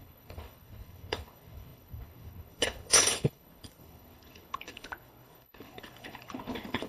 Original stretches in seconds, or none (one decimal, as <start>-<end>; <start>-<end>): none